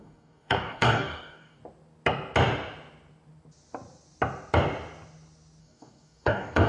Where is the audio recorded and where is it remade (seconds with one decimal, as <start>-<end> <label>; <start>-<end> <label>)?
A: 0.0-1.6 remade; 1.6-5.6 recorded; 5.6-6.7 remade